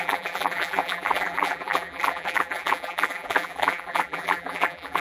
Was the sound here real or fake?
fake